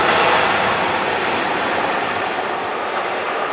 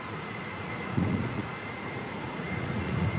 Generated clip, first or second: second